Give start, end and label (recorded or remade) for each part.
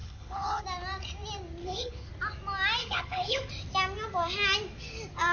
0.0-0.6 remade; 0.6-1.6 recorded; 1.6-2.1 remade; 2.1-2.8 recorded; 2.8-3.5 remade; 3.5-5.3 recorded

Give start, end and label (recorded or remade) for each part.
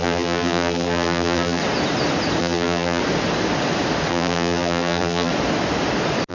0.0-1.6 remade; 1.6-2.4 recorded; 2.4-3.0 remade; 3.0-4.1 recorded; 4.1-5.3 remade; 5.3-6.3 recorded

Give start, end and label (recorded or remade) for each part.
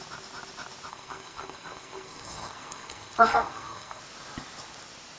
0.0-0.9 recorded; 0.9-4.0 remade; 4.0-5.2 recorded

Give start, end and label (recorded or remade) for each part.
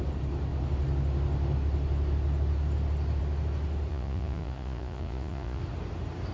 0.0-3.9 recorded; 3.9-5.6 remade; 5.6-6.3 recorded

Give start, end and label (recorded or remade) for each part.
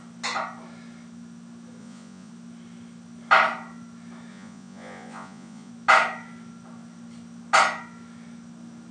0.0-1.8 recorded; 1.8-2.3 remade; 2.3-4.3 recorded; 4.3-5.7 remade; 5.7-8.9 recorded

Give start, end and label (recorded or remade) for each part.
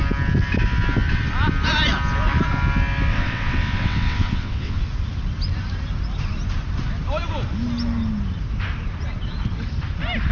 0.0-3.1 recorded; 3.1-4.8 remade; 4.8-10.3 recorded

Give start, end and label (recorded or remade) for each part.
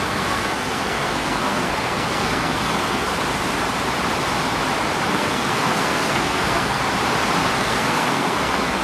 0.0-3.1 remade; 3.1-5.1 recorded; 5.1-6.8 remade; 6.8-7.5 recorded; 7.5-8.8 remade